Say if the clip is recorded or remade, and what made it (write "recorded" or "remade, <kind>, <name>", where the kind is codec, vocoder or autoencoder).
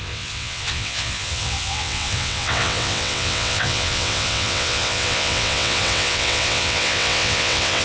remade, vocoder, WaveNeXt